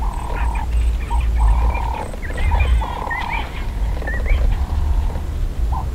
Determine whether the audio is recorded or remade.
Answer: recorded